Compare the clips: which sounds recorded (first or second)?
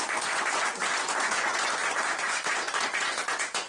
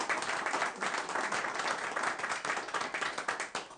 second